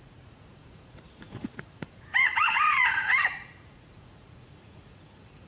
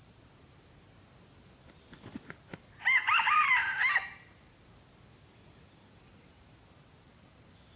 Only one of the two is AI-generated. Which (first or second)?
first